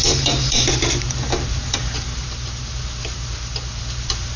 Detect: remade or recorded remade